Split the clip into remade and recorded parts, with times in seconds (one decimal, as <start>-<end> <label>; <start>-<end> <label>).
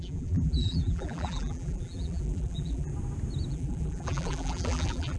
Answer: 0.0-2.9 remade; 2.9-3.5 recorded; 3.5-5.2 remade